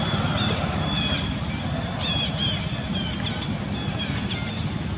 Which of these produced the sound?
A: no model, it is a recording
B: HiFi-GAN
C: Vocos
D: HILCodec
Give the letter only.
A